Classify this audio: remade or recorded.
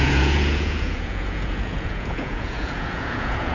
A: remade